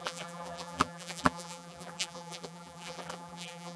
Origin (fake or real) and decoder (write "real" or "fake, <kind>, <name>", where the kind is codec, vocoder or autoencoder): fake, vocoder, BigVGAN v2